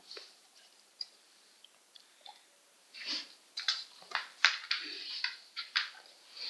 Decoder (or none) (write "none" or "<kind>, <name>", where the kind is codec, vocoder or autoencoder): vocoder, BigVGAN v2